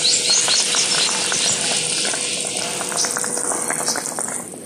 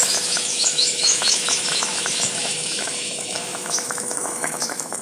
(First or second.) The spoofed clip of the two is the second